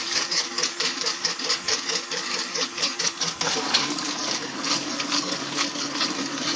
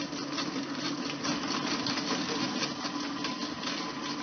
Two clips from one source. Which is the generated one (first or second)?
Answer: first